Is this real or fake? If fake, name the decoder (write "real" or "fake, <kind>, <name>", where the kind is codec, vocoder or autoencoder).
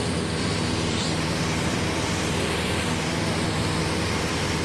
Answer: fake, vocoder, BigVGAN v2